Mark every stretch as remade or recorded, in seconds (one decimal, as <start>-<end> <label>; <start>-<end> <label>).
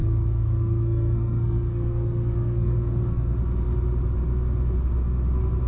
0.0-3.4 remade; 3.4-5.7 recorded